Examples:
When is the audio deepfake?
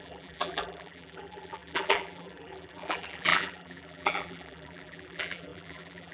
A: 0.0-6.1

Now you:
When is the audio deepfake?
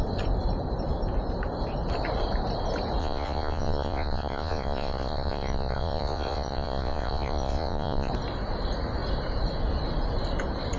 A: 3.0-8.1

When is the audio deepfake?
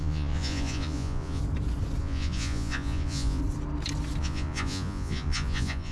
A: 0.0-1.4; 2.0-3.4; 4.2-5.9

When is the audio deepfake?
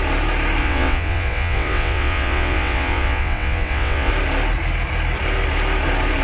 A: 0.6-4.1